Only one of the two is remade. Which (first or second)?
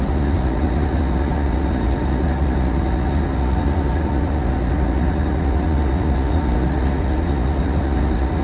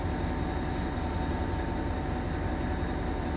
first